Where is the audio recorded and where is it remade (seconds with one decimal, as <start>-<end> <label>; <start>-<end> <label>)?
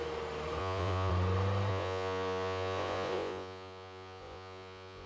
0.0-0.6 recorded; 0.6-1.1 remade; 1.1-1.7 recorded; 1.7-5.1 remade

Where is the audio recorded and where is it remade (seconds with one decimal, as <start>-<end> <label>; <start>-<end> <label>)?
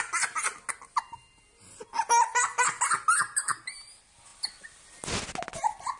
0.0-6.0 recorded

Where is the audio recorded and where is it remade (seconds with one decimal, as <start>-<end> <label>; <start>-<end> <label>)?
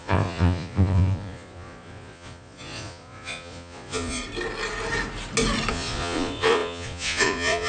0.0-4.2 remade; 4.2-5.7 recorded; 5.7-7.7 remade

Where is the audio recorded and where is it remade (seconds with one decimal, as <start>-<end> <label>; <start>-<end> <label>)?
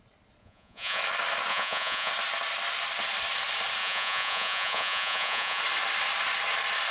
0.0-0.4 recorded; 0.4-1.0 remade; 1.0-1.5 recorded; 1.5-2.1 remade; 2.1-3.8 recorded; 3.8-5.6 remade; 5.6-6.9 recorded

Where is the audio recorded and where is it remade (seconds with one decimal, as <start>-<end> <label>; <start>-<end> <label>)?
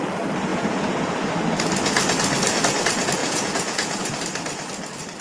0.0-0.5 recorded; 0.5-1.3 remade; 1.3-3.2 recorded; 3.2-4.2 remade; 4.2-5.2 recorded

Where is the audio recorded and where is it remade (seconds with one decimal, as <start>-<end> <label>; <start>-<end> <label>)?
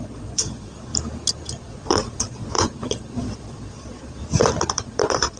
0.0-0.9 remade; 0.9-1.6 recorded; 1.6-4.2 remade; 4.2-4.7 recorded; 4.7-5.4 remade